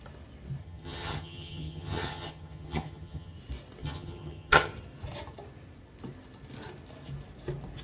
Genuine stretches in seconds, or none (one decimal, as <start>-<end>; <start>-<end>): 0.0-0.6; 3.4-3.8; 4.7-7.8